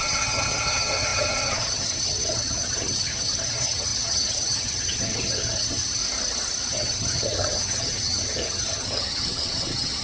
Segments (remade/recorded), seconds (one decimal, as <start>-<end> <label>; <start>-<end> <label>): 0.0-6.0 remade; 6.0-6.7 recorded; 6.7-10.0 remade